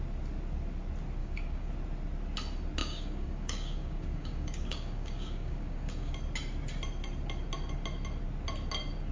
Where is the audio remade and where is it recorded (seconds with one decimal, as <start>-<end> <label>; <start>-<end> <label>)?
0.0-1.2 recorded; 1.2-1.7 remade; 1.7-2.8 recorded; 2.8-6.1 remade; 6.1-9.1 recorded

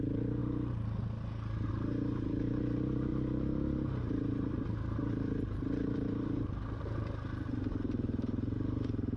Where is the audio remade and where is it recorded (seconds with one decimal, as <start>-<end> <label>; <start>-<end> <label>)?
0.0-0.4 remade; 0.4-1.7 recorded; 1.7-9.2 remade

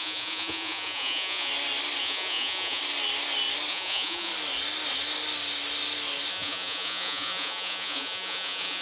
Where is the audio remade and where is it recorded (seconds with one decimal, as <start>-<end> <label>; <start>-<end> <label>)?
0.0-1.5 remade; 1.5-2.0 recorded; 2.0-2.8 remade; 2.8-3.7 recorded; 3.7-4.3 remade; 4.3-6.3 recorded; 6.3-8.8 remade

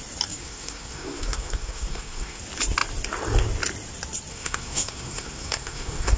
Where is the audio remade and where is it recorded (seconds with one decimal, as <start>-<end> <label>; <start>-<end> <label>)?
0.0-0.4 recorded; 0.4-2.4 remade; 2.4-4.3 recorded; 4.3-6.2 remade

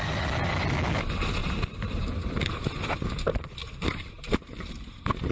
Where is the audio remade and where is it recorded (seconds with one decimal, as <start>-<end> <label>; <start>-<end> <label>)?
0.0-1.4 recorded; 1.4-2.5 remade; 2.5-3.6 recorded; 3.6-4.7 remade; 4.7-5.3 recorded